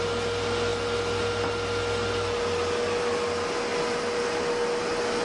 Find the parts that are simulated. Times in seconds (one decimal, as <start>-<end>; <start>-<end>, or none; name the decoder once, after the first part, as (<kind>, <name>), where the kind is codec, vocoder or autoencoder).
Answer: none